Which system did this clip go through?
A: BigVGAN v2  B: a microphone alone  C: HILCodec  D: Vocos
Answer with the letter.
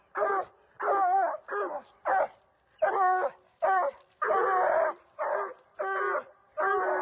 B